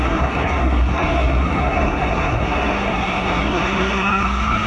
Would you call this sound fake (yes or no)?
yes